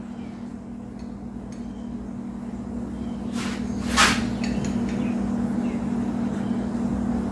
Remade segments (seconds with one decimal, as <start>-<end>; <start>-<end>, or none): none